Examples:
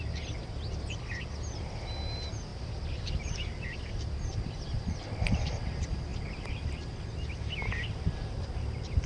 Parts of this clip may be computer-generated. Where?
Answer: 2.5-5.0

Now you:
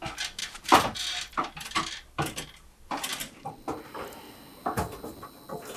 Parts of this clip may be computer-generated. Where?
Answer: 0.4-1.0

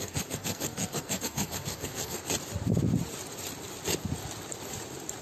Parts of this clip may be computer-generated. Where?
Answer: 0.0-2.2